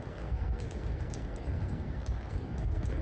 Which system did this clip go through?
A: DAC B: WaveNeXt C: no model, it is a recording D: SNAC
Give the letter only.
D